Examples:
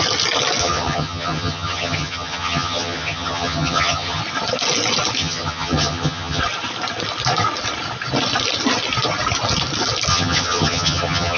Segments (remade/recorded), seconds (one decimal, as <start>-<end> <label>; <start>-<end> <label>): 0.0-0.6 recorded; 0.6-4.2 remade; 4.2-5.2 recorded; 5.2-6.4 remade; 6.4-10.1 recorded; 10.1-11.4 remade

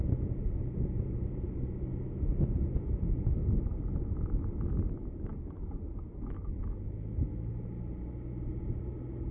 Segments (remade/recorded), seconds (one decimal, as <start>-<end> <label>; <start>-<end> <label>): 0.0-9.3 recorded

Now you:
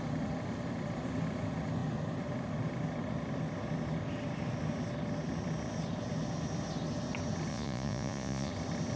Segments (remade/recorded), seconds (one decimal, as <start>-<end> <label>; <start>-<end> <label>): 0.0-7.5 recorded; 7.5-8.5 remade; 8.5-9.0 recorded

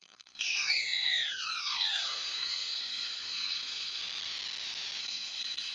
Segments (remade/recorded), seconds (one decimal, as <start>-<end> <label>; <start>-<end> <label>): 0.0-4.0 remade; 4.0-5.0 recorded; 5.0-5.7 remade